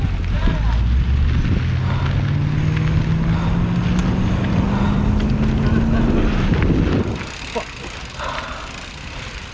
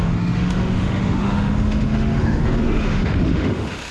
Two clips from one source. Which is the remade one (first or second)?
second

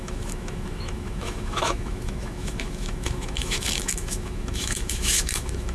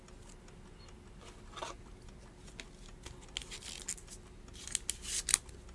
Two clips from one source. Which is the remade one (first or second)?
first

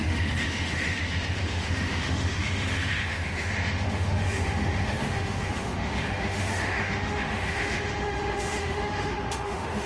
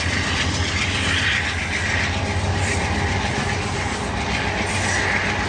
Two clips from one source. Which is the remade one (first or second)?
first